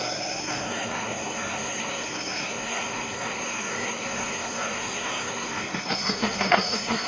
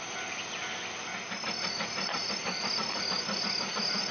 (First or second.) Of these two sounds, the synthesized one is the first